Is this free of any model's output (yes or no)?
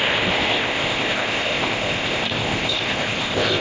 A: no